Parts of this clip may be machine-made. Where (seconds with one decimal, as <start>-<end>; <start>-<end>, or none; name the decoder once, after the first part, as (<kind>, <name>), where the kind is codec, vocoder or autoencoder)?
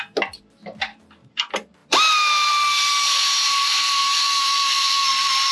4.0-5.1 (autoencoder, DAC-VAE)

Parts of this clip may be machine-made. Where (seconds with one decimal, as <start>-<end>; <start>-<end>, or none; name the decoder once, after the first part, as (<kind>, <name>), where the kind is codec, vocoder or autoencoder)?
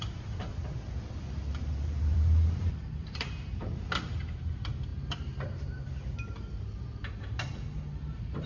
0.0-8.5 (vocoder, BigVGAN v2)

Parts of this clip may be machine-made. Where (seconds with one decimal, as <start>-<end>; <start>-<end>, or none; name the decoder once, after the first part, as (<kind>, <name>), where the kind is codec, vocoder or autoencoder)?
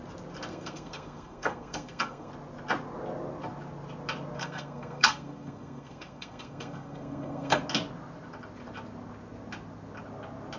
0.5-2.3 (codec, SNAC); 4.4-7.6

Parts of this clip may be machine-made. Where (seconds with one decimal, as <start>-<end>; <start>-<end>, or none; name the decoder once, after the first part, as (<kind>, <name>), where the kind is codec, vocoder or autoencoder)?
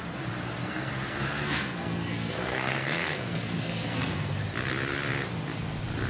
0.6-4.3 (codec, SNAC)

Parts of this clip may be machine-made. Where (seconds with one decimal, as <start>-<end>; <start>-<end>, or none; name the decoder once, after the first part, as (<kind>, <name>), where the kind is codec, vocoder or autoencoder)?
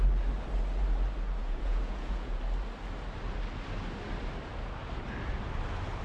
1.4-2.4 (vocoder, Vocos)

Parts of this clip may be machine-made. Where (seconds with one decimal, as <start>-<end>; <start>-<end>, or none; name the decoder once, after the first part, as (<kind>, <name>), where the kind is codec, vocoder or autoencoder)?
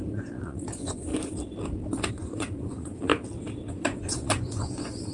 0.0-1.1 (vocoder, Vocos); 2.1-3.1; 3.7-5.1